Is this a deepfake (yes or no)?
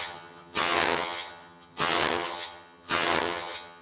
yes